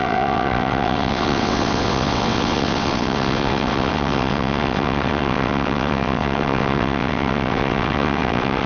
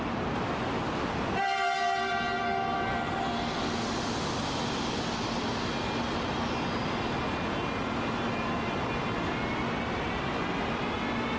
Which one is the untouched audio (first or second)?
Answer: second